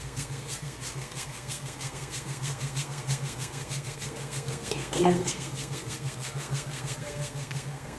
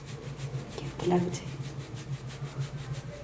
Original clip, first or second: second